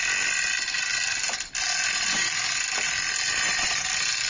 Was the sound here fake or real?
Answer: real